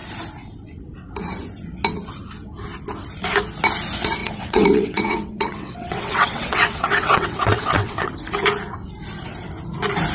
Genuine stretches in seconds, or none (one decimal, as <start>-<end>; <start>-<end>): 0.0-4.2; 8.1-10.1